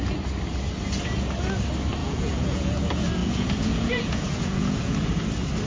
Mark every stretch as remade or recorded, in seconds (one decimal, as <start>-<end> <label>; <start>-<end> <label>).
0.0-2.0 recorded; 2.0-2.8 remade; 2.8-3.2 recorded; 3.2-5.2 remade; 5.2-5.7 recorded